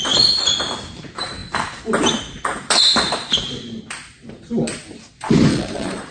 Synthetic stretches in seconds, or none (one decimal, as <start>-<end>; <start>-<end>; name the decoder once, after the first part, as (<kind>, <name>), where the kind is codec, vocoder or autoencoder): 5.5-6.1 (vocoder, Vocos)